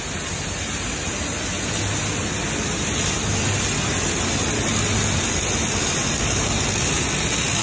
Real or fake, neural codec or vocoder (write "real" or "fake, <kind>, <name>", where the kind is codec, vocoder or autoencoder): real